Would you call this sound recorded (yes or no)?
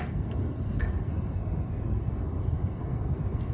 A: no